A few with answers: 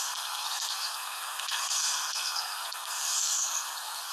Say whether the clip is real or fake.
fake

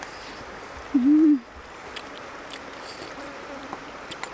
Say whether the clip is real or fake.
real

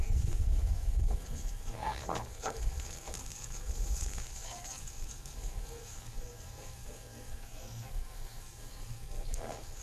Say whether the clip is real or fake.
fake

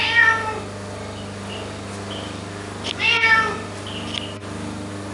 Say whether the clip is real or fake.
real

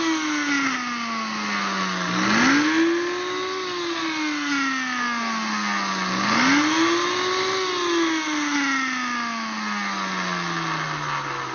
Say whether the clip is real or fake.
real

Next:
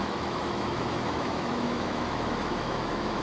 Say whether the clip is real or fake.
fake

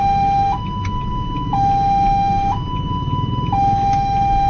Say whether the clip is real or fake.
fake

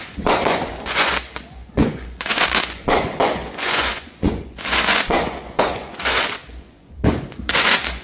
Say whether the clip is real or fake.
fake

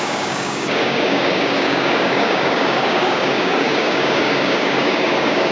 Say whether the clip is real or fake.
fake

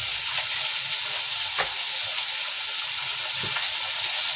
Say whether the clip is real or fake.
real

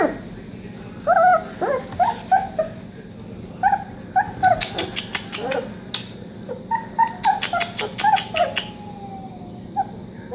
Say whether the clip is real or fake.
real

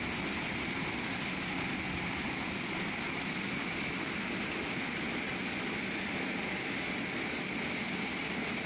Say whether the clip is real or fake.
real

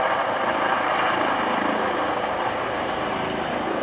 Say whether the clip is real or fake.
real